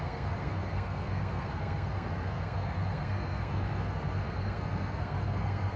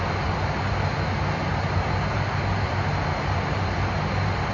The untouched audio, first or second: second